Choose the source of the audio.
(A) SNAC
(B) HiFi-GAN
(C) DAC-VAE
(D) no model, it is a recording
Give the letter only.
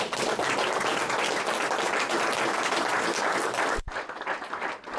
D